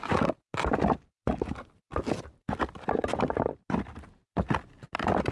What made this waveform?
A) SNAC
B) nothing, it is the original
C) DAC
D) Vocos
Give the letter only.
B